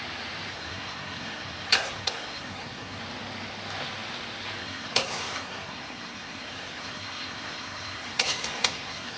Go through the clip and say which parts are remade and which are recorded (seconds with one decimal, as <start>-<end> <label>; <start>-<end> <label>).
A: 0.0-0.5 recorded; 0.5-3.0 remade; 3.0-4.6 recorded; 4.6-9.2 remade